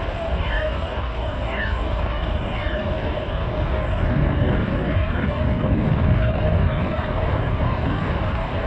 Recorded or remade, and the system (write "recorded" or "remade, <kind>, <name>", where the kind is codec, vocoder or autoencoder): remade, codec, DAC